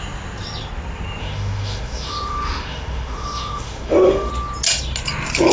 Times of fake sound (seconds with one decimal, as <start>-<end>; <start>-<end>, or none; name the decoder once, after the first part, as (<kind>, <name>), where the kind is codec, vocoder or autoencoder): 1.2-4.3 (autoencoder, DAC-VAE)